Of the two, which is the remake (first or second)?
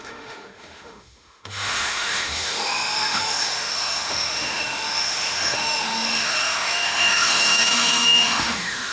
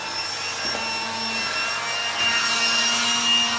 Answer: first